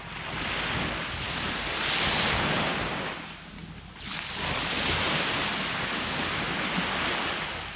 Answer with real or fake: real